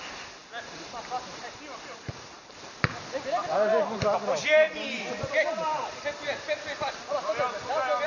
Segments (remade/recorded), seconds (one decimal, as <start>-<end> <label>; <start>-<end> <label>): 0.0-8.1 recorded